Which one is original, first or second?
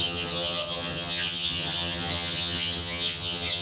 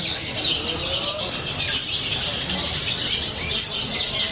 second